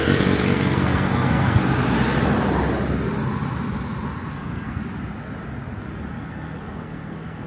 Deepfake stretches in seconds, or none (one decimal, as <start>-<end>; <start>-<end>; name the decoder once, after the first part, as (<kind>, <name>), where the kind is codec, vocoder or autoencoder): 0.0-1.6 (codec, SNAC); 4.3-4.8; 6.1-7.5